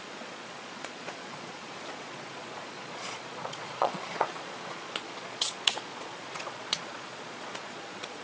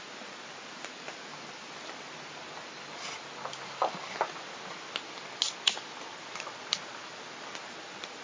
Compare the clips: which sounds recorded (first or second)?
second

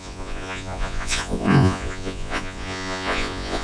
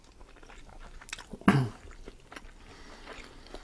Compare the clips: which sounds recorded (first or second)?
second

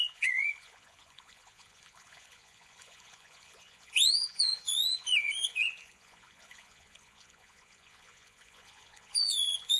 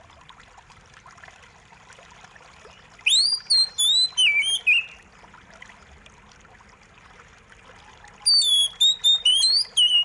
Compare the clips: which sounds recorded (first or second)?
second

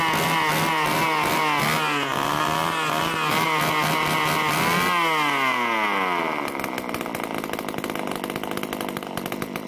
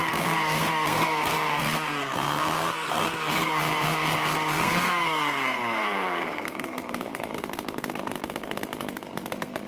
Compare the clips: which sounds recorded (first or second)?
first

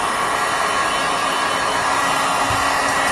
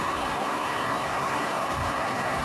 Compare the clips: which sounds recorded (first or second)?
first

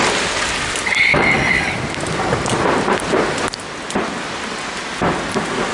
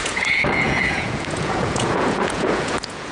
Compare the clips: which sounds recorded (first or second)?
first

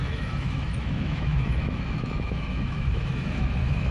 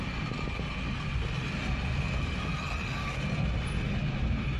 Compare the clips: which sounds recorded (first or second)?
second